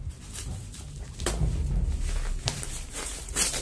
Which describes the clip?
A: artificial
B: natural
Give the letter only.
A